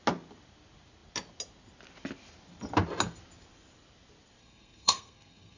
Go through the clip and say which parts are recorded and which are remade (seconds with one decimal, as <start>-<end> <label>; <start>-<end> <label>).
0.0-4.4 recorded; 4.4-5.6 remade